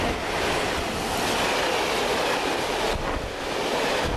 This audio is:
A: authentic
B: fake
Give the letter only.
A